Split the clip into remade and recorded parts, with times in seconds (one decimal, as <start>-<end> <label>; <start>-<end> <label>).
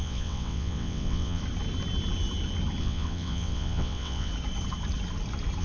0.0-1.4 remade; 1.4-2.8 recorded; 2.8-4.3 remade; 4.3-5.6 recorded